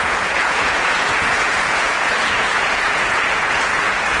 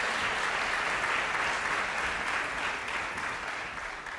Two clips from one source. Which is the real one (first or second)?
second